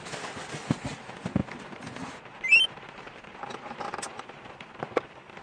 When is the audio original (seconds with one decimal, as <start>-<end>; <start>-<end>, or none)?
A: 0.0-5.4